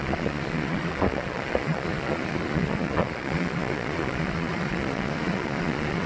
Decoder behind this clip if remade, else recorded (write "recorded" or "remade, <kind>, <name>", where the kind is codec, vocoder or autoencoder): remade, vocoder, Vocos